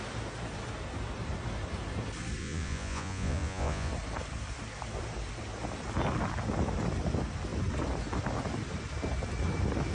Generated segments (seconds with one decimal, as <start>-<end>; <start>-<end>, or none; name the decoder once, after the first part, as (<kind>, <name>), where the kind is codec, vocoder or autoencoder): 2.4-3.9 (vocoder, Vocos)